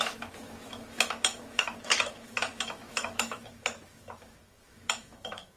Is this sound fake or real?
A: fake